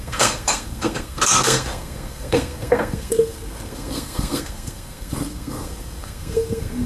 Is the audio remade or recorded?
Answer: remade